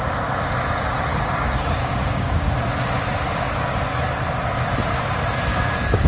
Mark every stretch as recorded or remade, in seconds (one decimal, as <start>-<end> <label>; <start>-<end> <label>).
0.0-1.1 recorded; 1.1-2.6 remade; 2.6-5.5 recorded; 5.5-6.1 remade